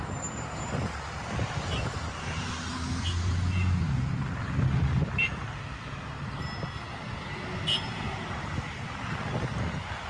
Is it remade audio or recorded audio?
recorded